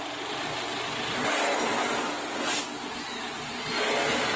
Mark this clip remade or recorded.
recorded